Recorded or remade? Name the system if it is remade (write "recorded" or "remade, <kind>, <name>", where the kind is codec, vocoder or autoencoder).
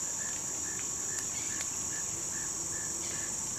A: recorded